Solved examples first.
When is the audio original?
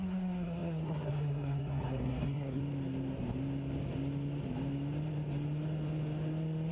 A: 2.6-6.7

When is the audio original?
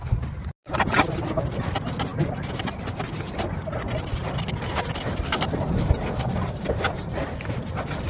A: 0.0-8.1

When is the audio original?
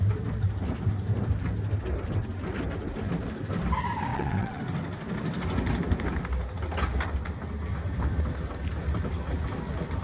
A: 0.0-4.1; 4.6-10.0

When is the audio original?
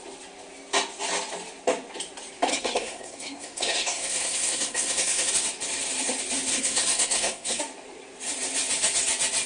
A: 0.0-2.5; 5.3-6.5; 7.6-9.5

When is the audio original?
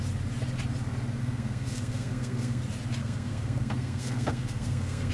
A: 0.0-1.2; 2.6-3.0